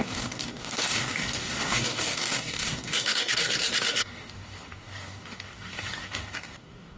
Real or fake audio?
fake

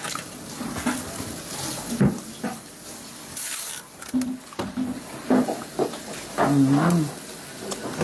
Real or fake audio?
real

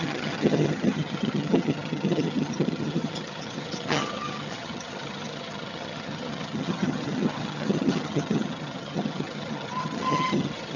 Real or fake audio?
fake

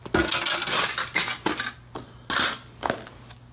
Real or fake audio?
real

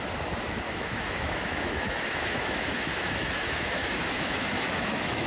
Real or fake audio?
fake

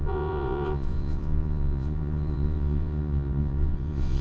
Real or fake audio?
fake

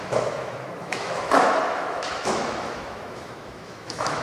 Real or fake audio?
fake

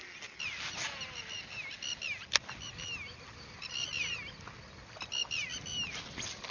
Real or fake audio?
real